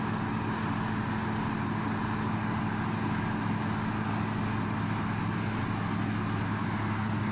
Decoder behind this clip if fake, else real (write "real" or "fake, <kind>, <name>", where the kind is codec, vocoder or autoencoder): real